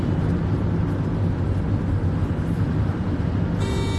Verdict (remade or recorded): recorded